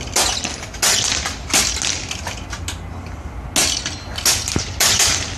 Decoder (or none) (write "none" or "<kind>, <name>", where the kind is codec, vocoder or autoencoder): none